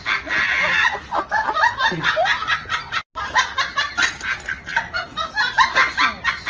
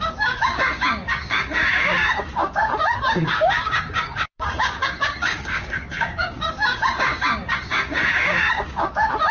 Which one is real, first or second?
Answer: first